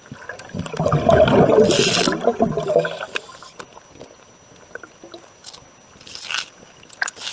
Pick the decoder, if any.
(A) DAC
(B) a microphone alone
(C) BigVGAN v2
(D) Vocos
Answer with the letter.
B